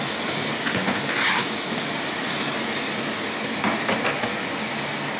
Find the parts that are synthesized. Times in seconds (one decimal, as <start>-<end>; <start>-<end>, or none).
1.4-1.9